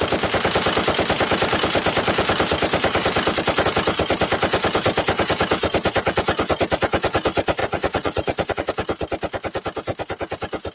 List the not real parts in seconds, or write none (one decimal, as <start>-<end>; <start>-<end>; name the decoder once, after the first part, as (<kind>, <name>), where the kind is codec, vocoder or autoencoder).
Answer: 7.6-8.7 (vocoder, Vocos)